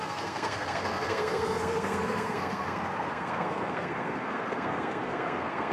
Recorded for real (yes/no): no